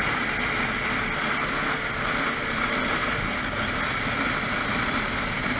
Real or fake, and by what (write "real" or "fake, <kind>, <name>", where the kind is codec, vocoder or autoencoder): real